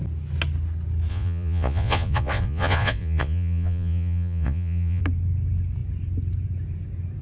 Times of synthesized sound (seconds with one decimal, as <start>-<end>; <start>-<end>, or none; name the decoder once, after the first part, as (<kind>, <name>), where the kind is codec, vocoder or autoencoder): 1.1-5.0 (vocoder, Vocos)